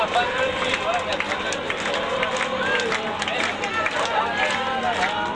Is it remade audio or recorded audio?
recorded